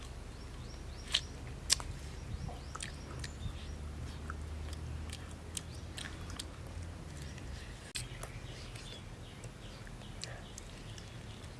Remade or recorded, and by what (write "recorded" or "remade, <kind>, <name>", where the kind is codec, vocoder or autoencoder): recorded